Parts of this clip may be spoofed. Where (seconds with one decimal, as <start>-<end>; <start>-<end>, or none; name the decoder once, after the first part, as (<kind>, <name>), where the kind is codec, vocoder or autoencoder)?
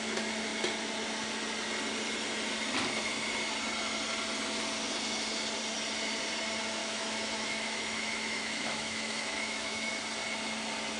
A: 6.8-9.9 (autoencoder, DAC-VAE)